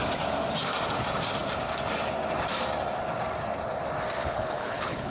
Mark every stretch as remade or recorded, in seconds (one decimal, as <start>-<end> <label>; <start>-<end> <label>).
0.0-4.2 recorded; 4.2-5.1 remade